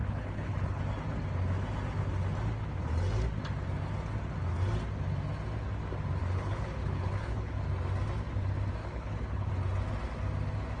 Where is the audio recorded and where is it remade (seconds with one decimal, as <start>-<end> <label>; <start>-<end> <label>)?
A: 0.0-0.8 remade; 0.8-6.2 recorded; 6.2-7.5 remade; 7.5-8.8 recorded; 8.8-9.5 remade; 9.5-10.8 recorded